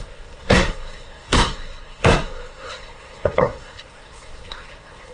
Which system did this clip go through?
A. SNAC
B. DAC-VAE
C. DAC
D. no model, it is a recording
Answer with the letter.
A